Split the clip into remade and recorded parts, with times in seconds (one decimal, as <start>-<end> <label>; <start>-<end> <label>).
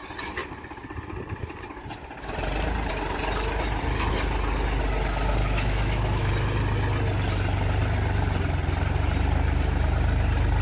0.0-5.4 recorded; 5.4-6.3 remade; 6.3-10.6 recorded